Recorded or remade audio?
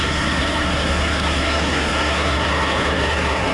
remade